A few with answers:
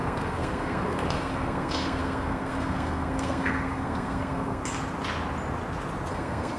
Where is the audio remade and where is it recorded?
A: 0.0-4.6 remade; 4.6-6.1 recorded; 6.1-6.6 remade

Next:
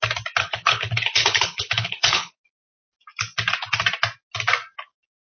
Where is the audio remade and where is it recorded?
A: 0.0-0.4 recorded; 0.4-2.3 remade; 2.3-5.3 recorded